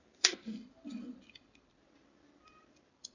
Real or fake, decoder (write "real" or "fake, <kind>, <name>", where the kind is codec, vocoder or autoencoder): fake, vocoder, BigVGAN v2